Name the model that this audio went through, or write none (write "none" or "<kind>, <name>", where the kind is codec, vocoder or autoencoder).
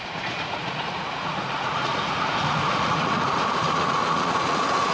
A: vocoder, Vocos